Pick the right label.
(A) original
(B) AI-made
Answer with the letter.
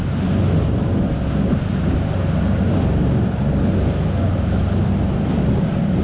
A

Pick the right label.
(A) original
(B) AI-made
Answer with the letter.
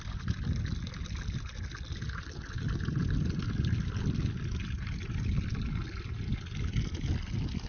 A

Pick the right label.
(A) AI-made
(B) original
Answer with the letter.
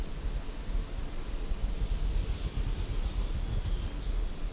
B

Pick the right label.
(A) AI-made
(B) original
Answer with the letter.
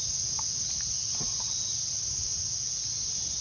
B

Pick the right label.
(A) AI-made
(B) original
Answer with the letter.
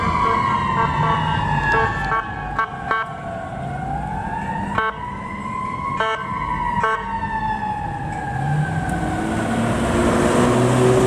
B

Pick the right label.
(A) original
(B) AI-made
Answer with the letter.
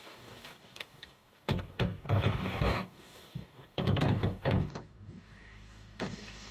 B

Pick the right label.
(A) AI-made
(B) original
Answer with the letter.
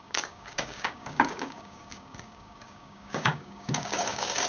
A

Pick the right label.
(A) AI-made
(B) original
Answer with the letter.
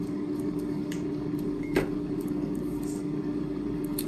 A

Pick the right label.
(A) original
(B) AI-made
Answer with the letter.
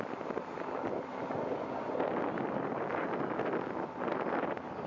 A